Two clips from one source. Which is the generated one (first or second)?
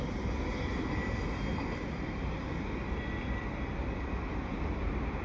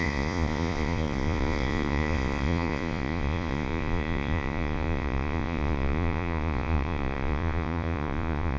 second